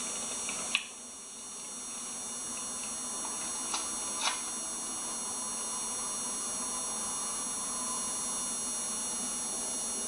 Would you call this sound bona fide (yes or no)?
yes